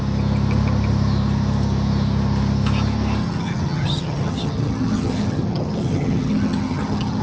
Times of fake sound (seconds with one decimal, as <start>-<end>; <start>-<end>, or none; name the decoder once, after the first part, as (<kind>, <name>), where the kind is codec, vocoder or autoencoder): 3.2-7.2 (vocoder, HiFi-GAN)